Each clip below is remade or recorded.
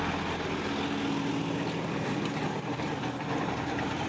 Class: recorded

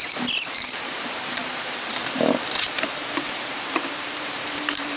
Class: remade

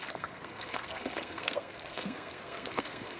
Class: remade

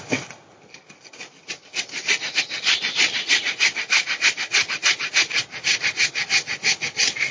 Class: recorded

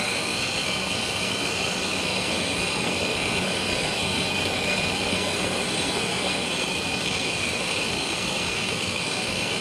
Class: remade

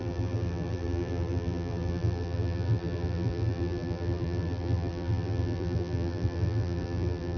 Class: remade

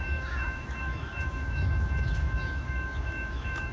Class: remade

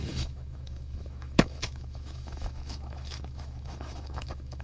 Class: remade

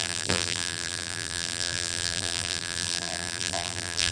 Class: remade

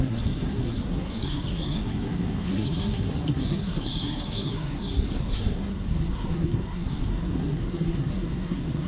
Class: remade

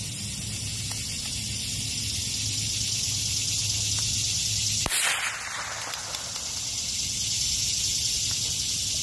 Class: recorded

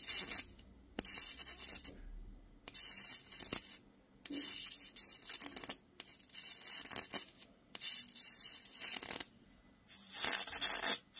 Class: recorded